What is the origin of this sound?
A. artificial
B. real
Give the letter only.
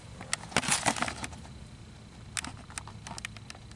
B